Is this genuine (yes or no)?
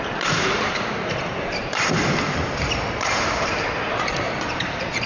no